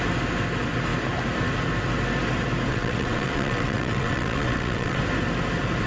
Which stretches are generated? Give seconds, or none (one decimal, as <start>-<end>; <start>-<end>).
2.7-5.0